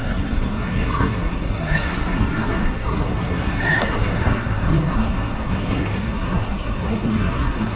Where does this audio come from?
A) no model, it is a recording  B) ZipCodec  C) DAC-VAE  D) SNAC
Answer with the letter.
D